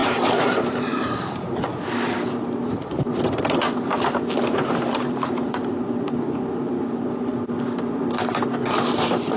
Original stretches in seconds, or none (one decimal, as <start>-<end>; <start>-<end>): 1.7-4.9; 7.3-9.4